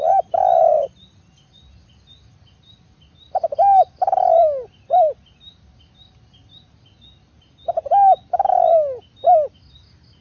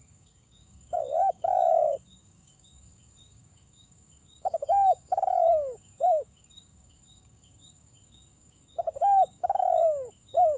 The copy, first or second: second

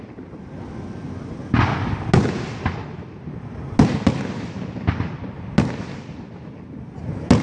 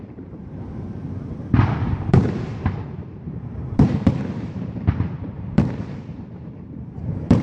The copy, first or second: second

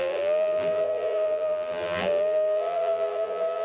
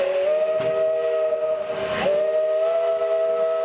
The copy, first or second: first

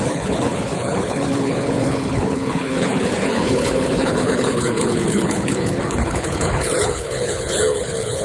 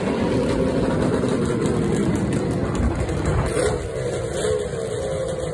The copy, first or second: first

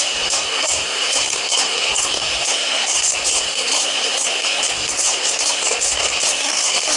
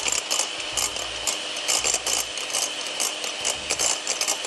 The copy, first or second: first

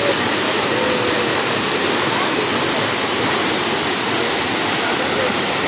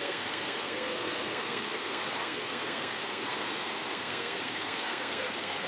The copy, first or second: second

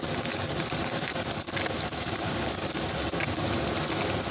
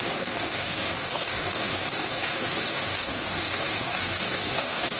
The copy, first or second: second